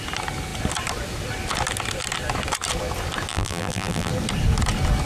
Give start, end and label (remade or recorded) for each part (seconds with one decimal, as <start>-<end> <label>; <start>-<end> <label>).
0.0-3.3 recorded; 3.3-4.1 remade; 4.1-5.1 recorded